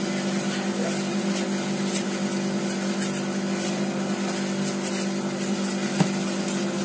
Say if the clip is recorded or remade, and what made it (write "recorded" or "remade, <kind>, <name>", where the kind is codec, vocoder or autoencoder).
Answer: recorded